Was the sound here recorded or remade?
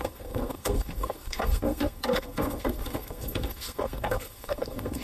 remade